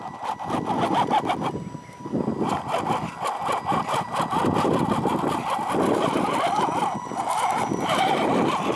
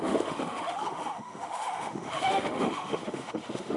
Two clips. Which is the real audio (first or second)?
first